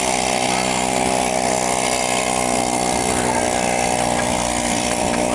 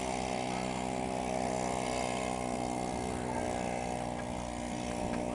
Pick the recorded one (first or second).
second